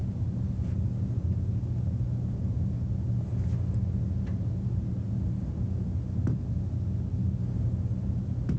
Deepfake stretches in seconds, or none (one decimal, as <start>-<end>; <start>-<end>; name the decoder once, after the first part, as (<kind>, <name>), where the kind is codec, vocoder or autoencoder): none